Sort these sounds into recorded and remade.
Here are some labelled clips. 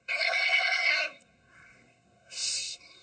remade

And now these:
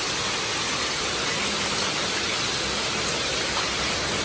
recorded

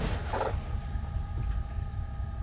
recorded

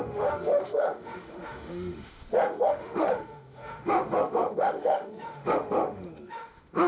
remade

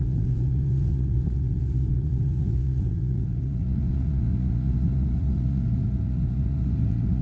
remade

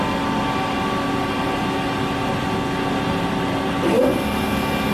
recorded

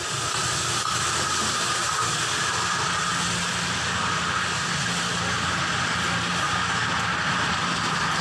recorded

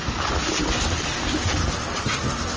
recorded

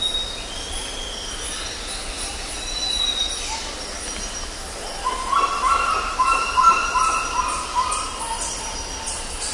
recorded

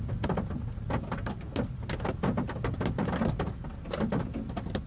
recorded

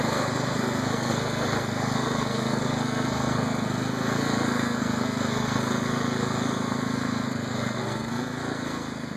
remade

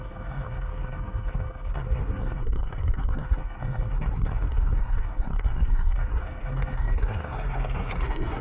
remade